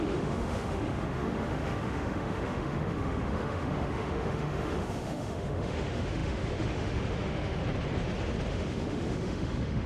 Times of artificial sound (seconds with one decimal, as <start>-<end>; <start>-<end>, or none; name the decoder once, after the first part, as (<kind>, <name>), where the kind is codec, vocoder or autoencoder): 0.0-7.6 (autoencoder, DAC-VAE); 8.5-9.9